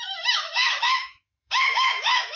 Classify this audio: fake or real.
fake